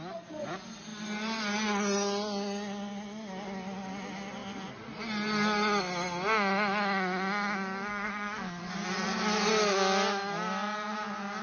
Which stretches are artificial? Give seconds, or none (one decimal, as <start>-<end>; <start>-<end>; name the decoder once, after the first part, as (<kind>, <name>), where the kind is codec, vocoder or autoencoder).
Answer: 7.9-8.7 (codec, SNAC)